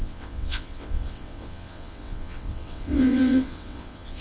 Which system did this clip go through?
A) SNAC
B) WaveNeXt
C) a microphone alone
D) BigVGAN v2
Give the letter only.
B